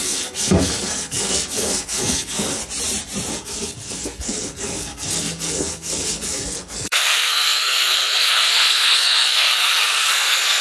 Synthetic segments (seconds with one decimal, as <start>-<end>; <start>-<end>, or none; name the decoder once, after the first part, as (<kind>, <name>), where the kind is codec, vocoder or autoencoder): 0.0-2.6 (codec, SNAC); 3.3-10.6